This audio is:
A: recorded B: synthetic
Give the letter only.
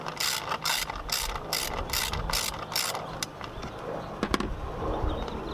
A